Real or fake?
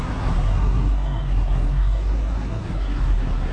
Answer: fake